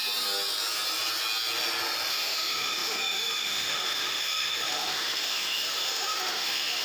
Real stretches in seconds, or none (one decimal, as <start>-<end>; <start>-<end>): 0.0-2.1